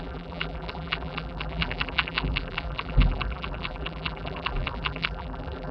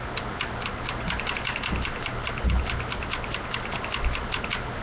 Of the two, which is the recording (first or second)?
second